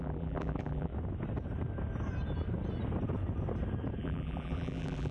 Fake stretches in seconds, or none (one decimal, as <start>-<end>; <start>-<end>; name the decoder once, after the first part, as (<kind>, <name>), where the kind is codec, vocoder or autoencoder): 0.0-0.9 (vocoder, BigVGAN v2); 4.0-5.1